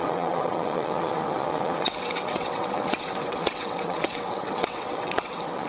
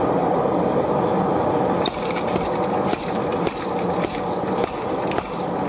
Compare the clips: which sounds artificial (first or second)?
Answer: first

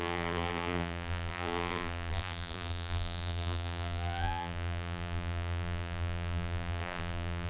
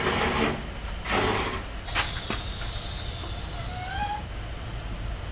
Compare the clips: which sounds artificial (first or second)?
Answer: first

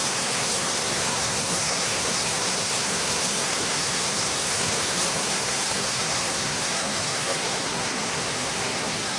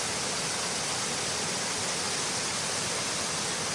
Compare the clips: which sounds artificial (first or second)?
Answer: first